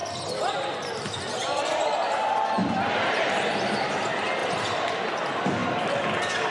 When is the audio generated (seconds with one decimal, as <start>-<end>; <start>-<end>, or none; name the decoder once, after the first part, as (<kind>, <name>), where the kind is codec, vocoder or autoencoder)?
2.6-3.9 (vocoder, BigVGAN v2); 4.4-4.9